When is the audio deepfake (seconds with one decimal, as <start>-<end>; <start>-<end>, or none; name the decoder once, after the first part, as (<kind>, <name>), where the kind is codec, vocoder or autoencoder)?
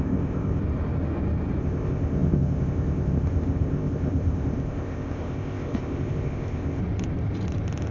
0.0-0.6 (codec, ZipCodec); 1.6-6.8